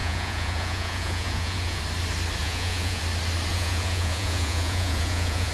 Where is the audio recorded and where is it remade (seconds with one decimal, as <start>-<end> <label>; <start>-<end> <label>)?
0.0-1.8 remade; 1.8-2.4 recorded; 2.4-3.0 remade; 3.0-3.5 recorded; 3.5-5.5 remade